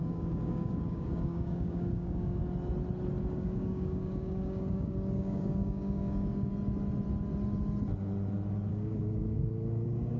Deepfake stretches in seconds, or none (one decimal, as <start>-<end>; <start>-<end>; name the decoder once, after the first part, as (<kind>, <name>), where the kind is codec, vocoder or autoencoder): 0.0-2.4 (codec, DAC); 3.2-6.5; 8.7-10.2